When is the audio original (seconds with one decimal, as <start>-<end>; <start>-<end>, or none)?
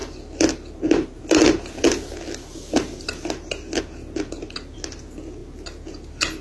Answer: 0.0-6.4